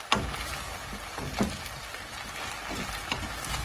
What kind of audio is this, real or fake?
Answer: real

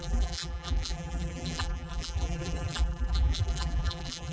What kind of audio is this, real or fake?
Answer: fake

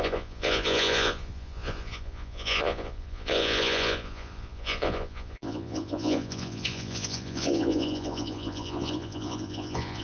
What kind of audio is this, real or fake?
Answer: fake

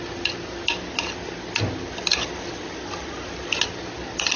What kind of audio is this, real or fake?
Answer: real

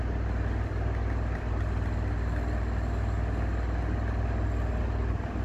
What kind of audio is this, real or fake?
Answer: real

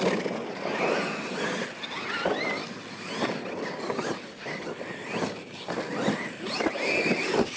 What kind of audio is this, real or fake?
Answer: real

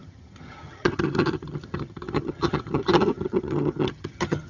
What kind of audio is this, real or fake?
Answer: fake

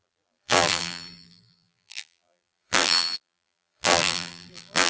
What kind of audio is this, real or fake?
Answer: fake